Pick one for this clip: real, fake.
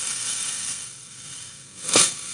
fake